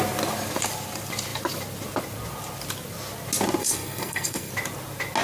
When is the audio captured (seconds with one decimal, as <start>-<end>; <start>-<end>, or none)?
0.0-3.6; 4.5-5.2